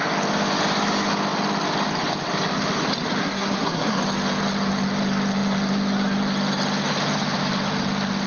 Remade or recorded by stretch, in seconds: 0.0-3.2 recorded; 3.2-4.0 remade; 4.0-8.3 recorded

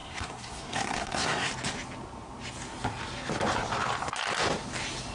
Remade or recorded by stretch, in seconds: 0.0-1.5 remade; 1.5-5.1 recorded

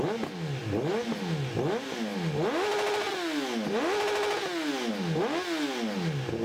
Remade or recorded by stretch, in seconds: 0.0-6.4 recorded

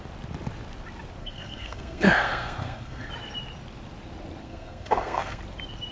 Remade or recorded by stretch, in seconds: 0.0-1.2 recorded; 1.2-3.1 remade; 3.1-4.4 recorded; 4.4-5.4 remade; 5.4-5.9 recorded

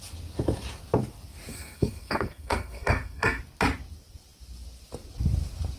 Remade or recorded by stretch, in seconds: 0.0-1.5 recorded; 1.5-3.4 remade; 3.4-5.8 recorded

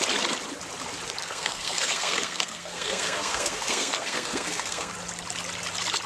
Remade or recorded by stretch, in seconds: 0.0-1.2 recorded; 1.2-4.9 remade; 4.9-6.1 recorded

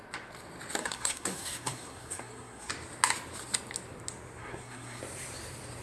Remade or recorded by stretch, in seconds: 0.0-0.8 recorded; 0.8-2.7 remade; 2.7-4.4 recorded; 4.4-5.0 remade; 5.0-5.8 recorded